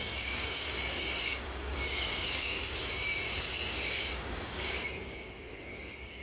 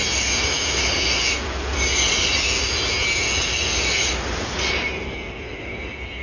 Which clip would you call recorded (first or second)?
second